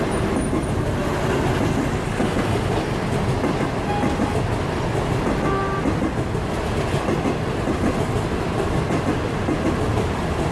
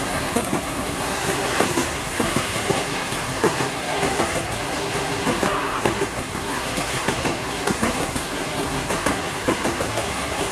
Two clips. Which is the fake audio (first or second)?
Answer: second